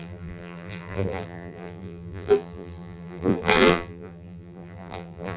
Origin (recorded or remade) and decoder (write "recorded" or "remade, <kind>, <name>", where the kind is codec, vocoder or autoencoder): remade, vocoder, BigVGAN v2